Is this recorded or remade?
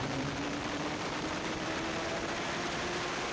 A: remade